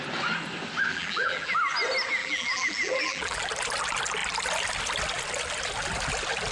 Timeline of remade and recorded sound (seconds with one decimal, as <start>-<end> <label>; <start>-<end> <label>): 0.0-0.9 recorded; 0.9-1.6 remade; 1.6-2.2 recorded; 2.2-3.4 remade; 3.4-6.5 recorded